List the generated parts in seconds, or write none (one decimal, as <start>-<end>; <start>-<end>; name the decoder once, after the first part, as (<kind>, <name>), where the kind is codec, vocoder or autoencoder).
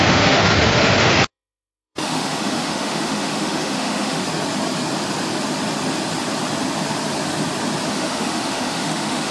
0.0-4.2 (autoencoder, DAC-VAE); 7.9-9.3